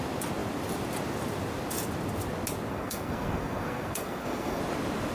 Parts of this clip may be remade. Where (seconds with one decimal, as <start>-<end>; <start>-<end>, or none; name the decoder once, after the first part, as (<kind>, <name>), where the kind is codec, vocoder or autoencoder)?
2.7-4.6 (codec, SNAC)

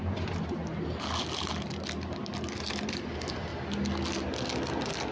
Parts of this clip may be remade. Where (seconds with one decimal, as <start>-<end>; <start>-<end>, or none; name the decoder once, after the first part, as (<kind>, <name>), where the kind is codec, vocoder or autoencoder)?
0.0-0.6 (vocoder, BigVGAN v2); 2.5-3.5

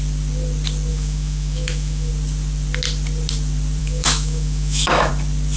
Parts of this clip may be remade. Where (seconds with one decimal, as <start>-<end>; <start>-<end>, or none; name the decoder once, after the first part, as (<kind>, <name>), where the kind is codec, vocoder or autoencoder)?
0.9-2.1 (autoencoder, DAC-VAE); 3.8-5.1

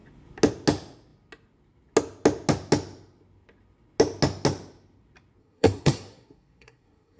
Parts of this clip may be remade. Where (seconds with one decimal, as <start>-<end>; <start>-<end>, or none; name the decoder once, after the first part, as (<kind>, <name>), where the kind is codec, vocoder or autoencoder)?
5.4-7.2 (codec, SNAC)

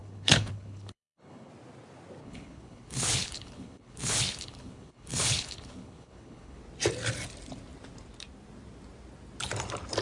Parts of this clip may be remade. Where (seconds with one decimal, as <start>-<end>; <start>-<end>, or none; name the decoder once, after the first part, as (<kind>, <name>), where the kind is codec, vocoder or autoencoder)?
0.0-1.5 (codec, HILCodec); 2.2-6.6

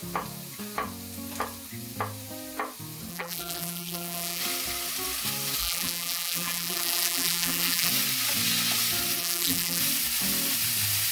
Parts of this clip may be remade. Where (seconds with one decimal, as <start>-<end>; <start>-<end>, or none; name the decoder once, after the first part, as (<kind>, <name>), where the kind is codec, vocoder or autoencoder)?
3.1-4.4 (vocoder, BigVGAN v2); 5.6-7.9; 9.2-9.8

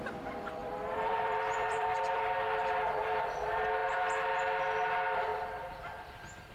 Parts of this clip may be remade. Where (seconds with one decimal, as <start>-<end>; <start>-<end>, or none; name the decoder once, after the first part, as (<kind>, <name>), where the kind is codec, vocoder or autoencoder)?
0.6-2.2 (vocoder, BigVGAN v2); 5.3-6.1

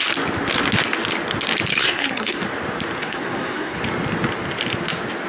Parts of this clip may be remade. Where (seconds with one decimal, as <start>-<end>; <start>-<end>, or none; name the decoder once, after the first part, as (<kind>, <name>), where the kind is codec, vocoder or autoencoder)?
1.7-2.4 (codec, SNAC); 3.0-3.8